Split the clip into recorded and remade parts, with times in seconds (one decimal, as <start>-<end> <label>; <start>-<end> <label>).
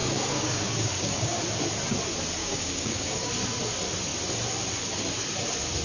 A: 0.0-1.4 remade; 1.4-2.4 recorded; 2.4-3.3 remade; 3.3-5.8 recorded